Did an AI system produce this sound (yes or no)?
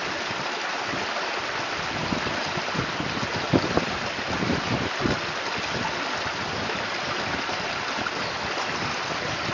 no